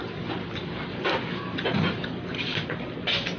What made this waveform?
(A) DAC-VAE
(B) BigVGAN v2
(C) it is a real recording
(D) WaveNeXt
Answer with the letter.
C